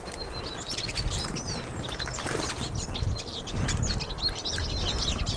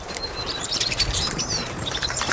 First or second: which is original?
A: first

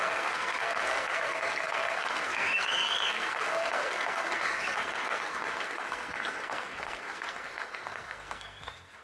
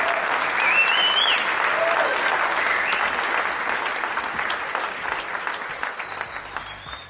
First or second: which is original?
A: second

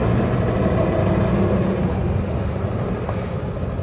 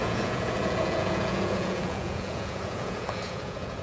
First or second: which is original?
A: first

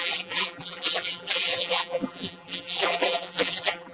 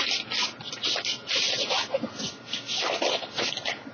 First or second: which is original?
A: second